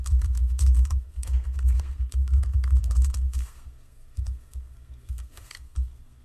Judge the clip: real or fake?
fake